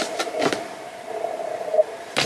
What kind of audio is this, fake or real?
real